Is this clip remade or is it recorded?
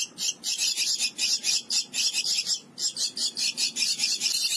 recorded